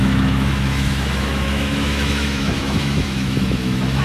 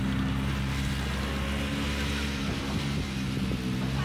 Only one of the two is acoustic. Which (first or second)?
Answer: second